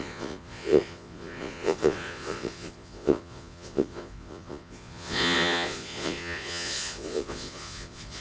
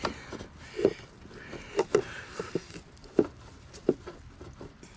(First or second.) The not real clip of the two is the first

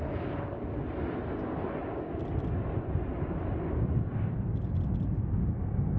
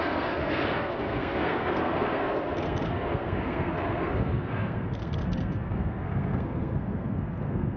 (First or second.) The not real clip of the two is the second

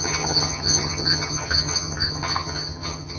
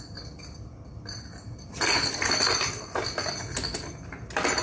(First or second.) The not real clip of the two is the first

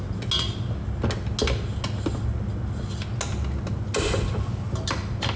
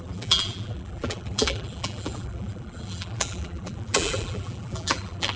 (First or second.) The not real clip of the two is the second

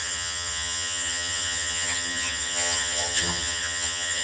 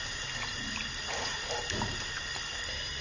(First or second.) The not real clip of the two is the first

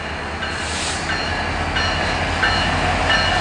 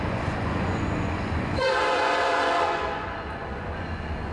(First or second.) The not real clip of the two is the second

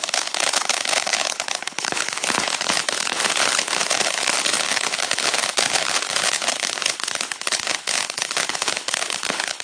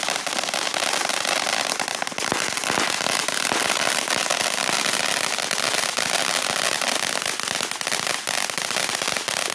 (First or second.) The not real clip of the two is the first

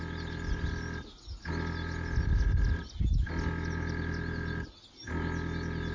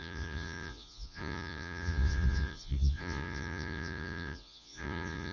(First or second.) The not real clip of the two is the second